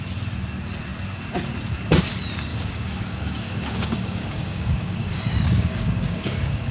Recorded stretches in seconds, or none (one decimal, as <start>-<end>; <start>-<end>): 0.0-2.5